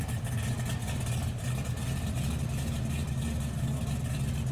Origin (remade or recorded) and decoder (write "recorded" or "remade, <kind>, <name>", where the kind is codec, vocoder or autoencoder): recorded